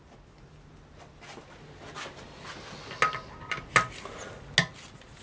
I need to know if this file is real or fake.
real